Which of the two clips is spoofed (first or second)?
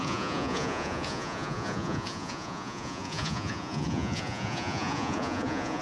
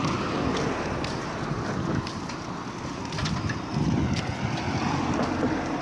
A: first